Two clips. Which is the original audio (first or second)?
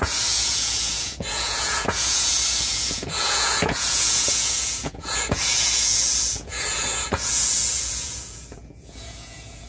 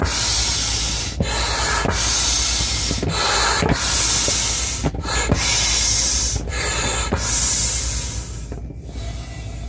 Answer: second